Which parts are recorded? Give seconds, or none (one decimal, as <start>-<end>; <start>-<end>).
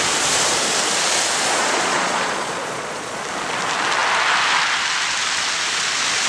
0.0-1.6; 3.2-6.3